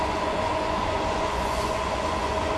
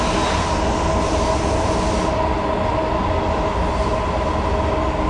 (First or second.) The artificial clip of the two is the first